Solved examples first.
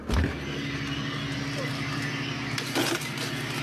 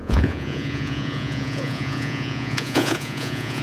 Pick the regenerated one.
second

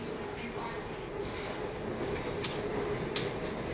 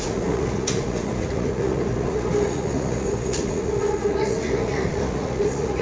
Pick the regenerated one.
second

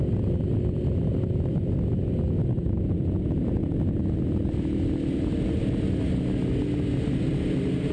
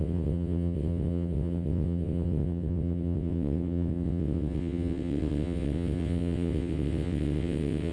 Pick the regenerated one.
second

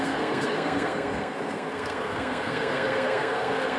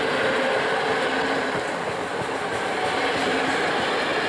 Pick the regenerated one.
first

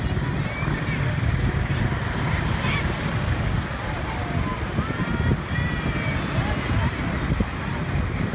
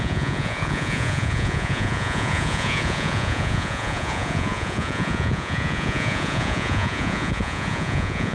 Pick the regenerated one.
second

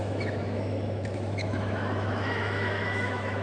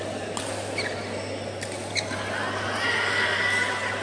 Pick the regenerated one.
first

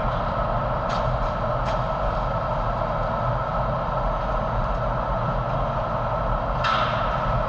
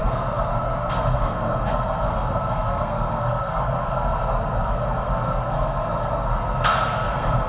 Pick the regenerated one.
second